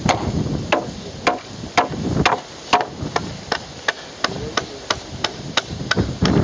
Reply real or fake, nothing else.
real